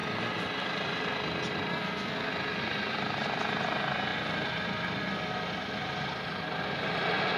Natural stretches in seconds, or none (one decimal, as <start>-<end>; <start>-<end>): 0.0-1.7; 2.3-7.4